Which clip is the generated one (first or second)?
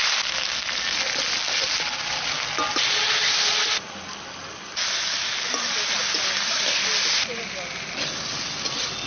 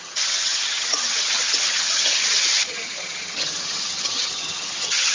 second